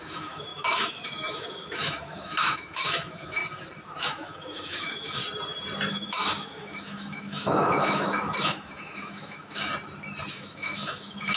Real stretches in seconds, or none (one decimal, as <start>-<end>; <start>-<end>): 3.4-4.0; 5.2-5.9; 9.7-10.3